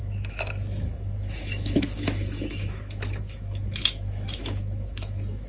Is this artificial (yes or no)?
yes